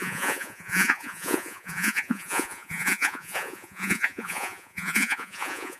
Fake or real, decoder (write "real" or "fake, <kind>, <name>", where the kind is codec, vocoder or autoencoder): fake, vocoder, Vocos